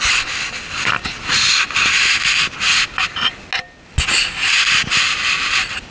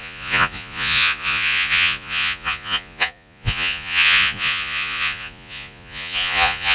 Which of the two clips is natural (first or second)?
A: first